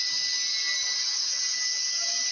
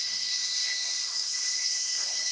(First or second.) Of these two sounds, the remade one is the second